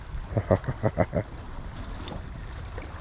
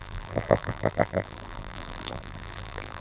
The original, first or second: first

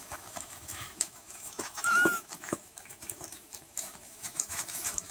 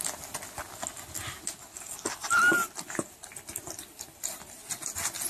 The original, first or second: second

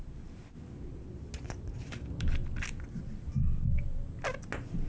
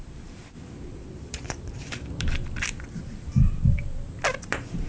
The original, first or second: first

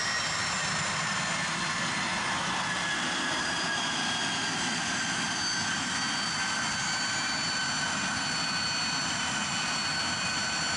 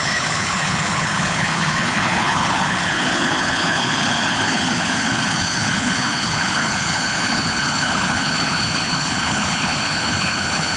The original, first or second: first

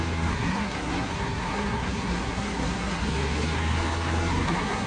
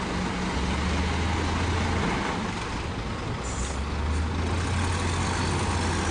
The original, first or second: second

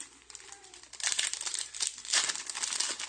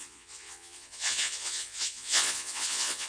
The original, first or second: first